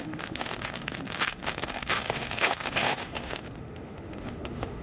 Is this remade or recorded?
remade